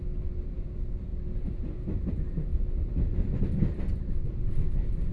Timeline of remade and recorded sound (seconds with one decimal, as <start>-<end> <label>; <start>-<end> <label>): 0.0-5.1 recorded

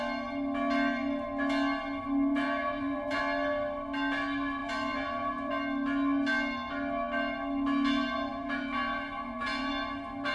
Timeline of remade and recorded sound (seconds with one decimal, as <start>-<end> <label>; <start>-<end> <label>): 0.0-2.3 recorded; 2.3-3.2 remade; 3.2-4.6 recorded; 4.6-5.5 remade; 5.5-8.3 recorded; 8.3-9.7 remade; 9.7-10.3 recorded

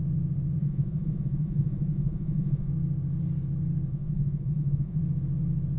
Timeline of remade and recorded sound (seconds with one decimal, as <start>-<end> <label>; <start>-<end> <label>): 0.0-0.6 recorded; 0.6-2.7 remade; 2.7-3.9 recorded; 3.9-5.0 remade; 5.0-5.8 recorded